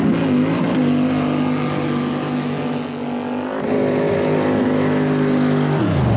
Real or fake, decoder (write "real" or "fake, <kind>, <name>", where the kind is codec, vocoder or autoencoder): real